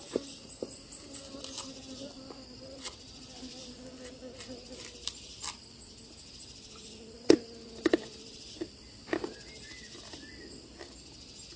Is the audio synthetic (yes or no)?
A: no